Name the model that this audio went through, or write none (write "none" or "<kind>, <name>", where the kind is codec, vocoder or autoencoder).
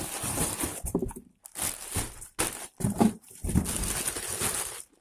none